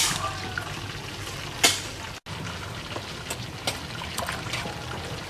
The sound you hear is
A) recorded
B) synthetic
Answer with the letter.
A